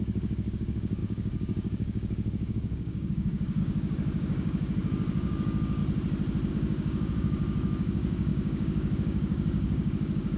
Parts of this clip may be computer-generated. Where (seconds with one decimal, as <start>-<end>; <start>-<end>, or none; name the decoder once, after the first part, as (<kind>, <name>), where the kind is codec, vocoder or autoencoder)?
0.0-5.8 (codec, DAC); 6.5-10.4